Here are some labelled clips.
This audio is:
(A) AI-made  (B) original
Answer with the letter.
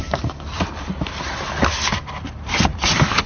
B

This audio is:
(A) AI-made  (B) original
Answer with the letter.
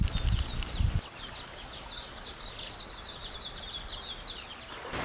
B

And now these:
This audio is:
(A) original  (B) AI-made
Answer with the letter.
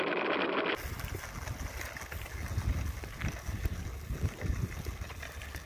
A